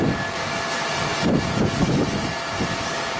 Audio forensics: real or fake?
real